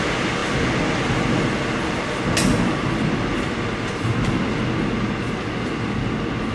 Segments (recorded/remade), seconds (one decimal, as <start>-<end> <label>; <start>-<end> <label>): 0.0-6.5 recorded